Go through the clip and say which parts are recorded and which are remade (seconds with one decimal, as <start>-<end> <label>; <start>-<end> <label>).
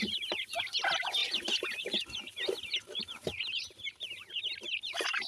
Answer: 0.0-1.2 recorded; 1.2-4.4 remade; 4.4-5.3 recorded